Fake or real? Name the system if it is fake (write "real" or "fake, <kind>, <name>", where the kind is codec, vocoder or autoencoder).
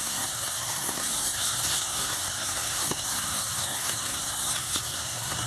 fake, codec, SNAC